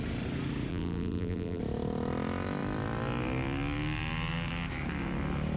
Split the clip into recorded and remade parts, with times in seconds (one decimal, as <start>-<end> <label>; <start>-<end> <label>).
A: 0.0-0.7 recorded; 0.7-1.6 remade; 1.6-5.6 recorded